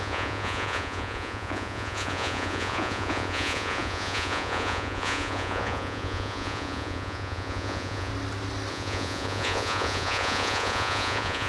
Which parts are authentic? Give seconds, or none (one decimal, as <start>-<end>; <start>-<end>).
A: 8.1-8.7